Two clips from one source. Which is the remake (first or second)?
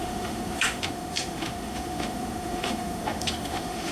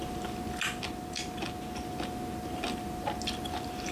first